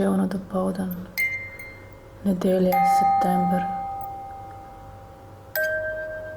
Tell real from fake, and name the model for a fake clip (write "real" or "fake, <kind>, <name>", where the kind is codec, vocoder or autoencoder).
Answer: real